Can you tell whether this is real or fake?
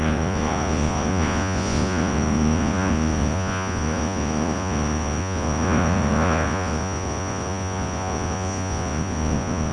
fake